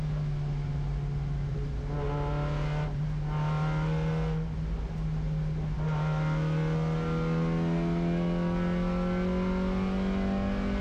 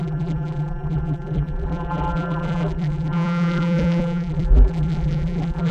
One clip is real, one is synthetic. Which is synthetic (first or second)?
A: second